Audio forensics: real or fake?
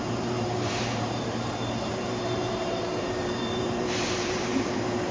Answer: fake